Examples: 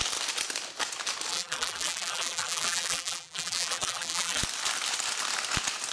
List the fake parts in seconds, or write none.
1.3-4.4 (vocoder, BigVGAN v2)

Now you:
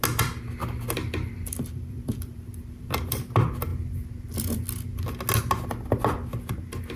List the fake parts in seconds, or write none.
0.6-3.2 (vocoder, BigVGAN v2)

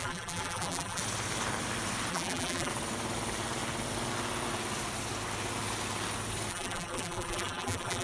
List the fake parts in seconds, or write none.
0.0-1.0 (vocoder, BigVGAN v2); 2.1-2.7; 6.5-8.0

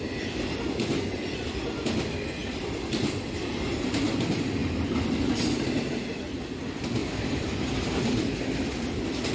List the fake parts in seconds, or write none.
2.4-2.9 (vocoder, BigVGAN v2); 4.6-5.8; 7.0-9.3

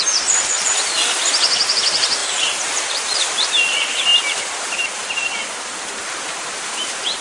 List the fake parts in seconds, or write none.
2.2-3.5 (vocoder, BigVGAN v2)